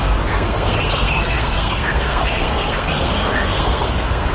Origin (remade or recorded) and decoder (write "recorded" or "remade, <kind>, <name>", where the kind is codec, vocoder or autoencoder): remade, codec, SNAC